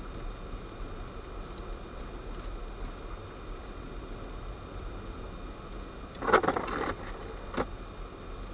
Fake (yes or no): no